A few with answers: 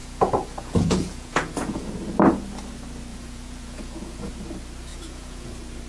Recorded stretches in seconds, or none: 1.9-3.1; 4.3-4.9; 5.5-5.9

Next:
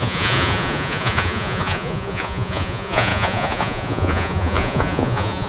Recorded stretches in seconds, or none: none

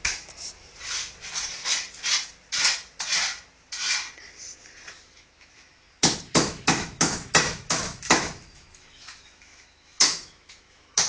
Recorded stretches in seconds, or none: 0.7-4.9

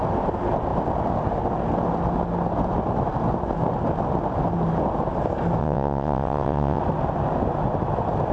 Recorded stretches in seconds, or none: 0.0-5.6; 6.8-8.3

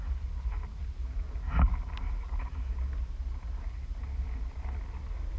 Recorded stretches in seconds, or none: 0.0-5.4

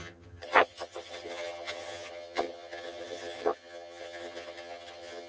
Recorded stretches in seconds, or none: none